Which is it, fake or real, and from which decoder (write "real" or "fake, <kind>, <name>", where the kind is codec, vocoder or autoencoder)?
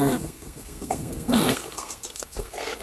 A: fake, codec, SNAC